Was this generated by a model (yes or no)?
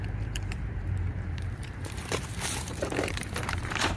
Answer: yes